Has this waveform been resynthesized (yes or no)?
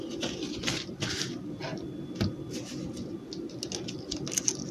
no